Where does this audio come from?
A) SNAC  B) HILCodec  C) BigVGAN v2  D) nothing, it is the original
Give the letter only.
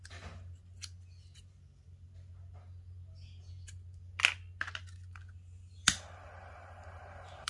D